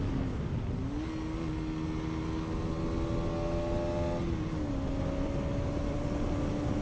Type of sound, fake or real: real